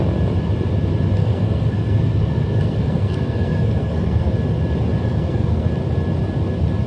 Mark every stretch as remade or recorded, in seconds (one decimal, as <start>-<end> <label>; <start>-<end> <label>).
0.0-1.2 recorded; 1.2-4.3 remade; 4.3-5.0 recorded; 5.0-5.7 remade; 5.7-6.9 recorded

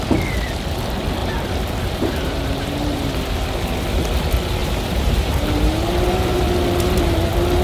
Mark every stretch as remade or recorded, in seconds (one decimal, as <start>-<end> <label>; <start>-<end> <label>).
0.0-1.2 recorded; 1.2-3.2 remade; 3.2-4.6 recorded; 4.6-6.4 remade; 6.4-7.6 recorded

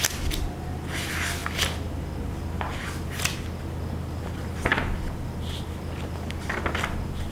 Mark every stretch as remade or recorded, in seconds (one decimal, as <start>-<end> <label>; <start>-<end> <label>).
0.0-7.3 recorded

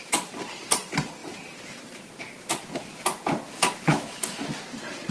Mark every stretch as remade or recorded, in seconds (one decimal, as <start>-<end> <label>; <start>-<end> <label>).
0.0-3.9 recorded; 3.9-4.5 remade; 4.5-5.1 recorded

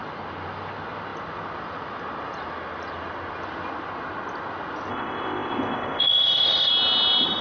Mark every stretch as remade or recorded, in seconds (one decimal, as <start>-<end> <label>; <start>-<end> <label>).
0.0-4.9 recorded; 4.9-6.7 remade; 6.7-7.4 recorded

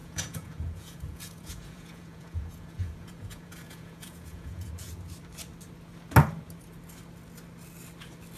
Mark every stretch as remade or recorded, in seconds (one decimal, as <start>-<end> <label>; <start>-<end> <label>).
0.0-4.7 remade; 4.7-8.4 recorded

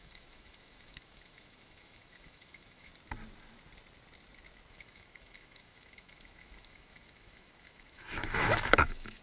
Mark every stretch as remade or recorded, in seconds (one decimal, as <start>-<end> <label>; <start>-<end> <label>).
0.0-2.9 remade; 2.9-4.7 recorded; 4.7-9.2 remade